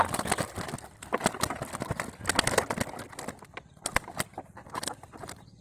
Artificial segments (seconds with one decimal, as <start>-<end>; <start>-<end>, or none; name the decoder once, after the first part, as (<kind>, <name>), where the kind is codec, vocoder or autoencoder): 4.3-4.9 (vocoder, BigVGAN v2)